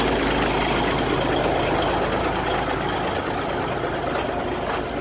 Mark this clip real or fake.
real